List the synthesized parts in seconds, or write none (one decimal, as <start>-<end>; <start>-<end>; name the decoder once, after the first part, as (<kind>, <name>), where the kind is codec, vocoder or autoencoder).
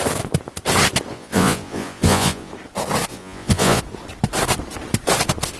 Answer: 1.1-2.5 (vocoder, Vocos); 3.1-3.8